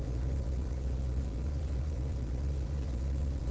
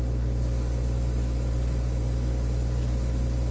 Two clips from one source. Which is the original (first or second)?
second